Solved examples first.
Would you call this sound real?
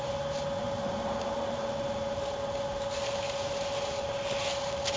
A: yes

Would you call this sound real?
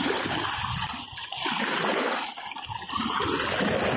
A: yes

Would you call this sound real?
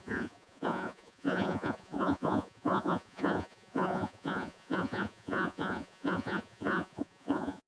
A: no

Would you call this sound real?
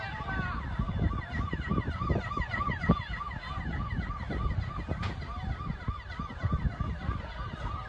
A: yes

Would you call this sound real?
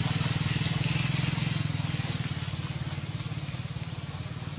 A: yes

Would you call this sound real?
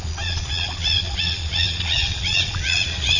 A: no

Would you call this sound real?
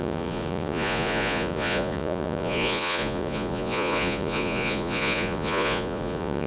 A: no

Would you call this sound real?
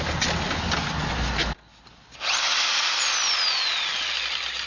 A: yes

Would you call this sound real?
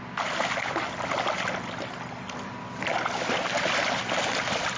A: yes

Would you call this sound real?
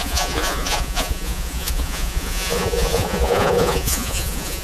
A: no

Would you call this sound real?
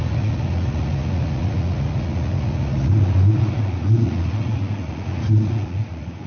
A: no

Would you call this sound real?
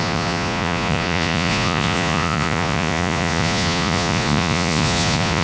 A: no